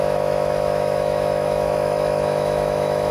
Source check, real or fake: fake